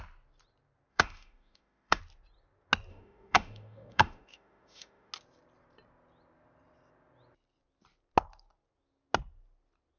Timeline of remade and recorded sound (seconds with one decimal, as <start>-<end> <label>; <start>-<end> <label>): 0.0-0.9 recorded; 0.9-2.0 remade; 2.0-2.9 recorded; 2.9-5.1 remade; 5.1-10.0 recorded

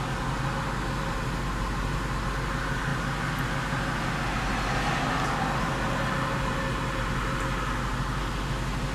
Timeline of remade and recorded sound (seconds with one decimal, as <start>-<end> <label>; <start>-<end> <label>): 0.0-8.9 recorded

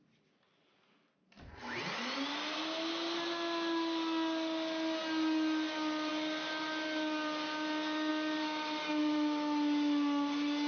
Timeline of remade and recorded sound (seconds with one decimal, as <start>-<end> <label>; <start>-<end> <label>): 0.0-10.7 recorded